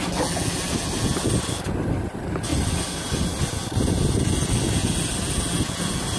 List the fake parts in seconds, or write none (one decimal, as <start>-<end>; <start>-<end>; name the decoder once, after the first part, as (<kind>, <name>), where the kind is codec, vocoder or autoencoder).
none

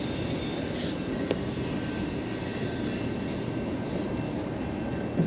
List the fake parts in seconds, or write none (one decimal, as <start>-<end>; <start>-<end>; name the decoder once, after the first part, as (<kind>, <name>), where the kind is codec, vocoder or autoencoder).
none

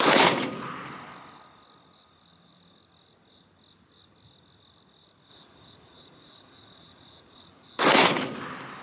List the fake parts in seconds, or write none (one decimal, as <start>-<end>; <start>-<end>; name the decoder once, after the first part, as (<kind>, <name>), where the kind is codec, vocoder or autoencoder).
5.3-7.8 (vocoder, Vocos)